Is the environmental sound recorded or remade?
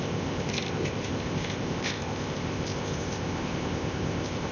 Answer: remade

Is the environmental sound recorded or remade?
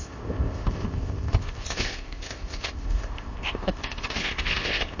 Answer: remade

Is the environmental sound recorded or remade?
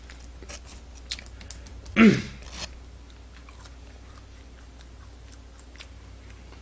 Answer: recorded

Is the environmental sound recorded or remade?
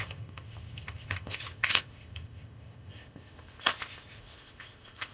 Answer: remade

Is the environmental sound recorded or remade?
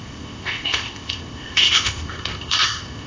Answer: remade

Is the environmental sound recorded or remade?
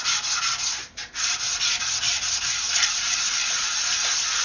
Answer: recorded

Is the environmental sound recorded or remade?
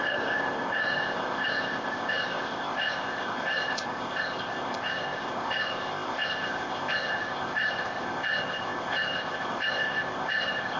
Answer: remade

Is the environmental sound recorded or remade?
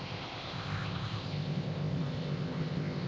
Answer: remade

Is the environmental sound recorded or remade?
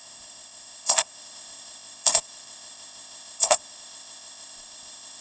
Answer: remade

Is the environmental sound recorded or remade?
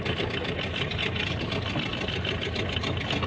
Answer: recorded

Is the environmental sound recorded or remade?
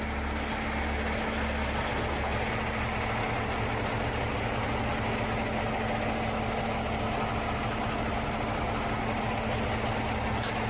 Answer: recorded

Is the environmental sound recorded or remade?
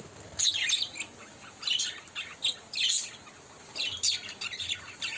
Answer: recorded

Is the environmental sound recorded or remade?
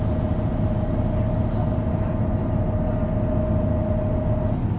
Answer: recorded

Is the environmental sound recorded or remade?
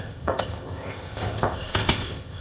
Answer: remade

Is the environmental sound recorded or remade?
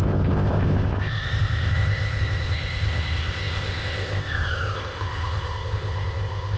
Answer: remade